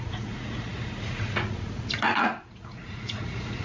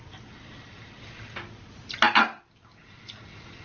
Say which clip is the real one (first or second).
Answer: second